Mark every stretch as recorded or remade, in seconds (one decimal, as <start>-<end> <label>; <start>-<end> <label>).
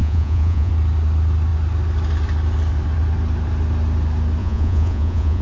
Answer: 0.0-0.7 remade; 0.7-4.4 recorded; 4.4-5.4 remade